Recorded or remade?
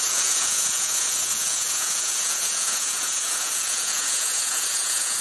remade